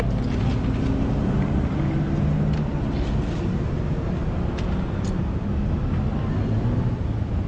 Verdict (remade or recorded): recorded